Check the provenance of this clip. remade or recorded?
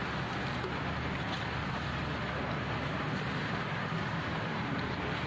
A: recorded